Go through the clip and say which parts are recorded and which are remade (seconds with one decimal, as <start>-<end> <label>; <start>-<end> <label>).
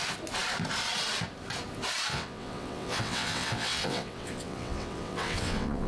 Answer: 0.0-2.1 recorded; 2.1-5.9 remade